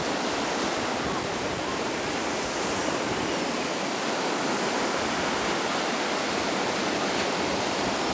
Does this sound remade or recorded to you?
recorded